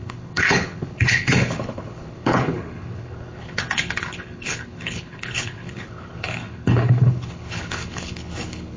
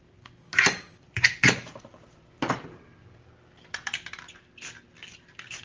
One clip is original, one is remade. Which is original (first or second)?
second